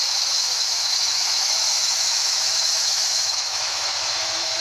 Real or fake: fake